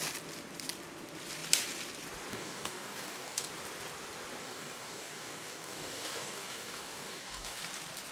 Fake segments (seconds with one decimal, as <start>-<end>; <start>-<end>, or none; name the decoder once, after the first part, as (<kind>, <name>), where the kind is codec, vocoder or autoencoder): 2.3-3.5 (codec, DAC); 4.4-7.6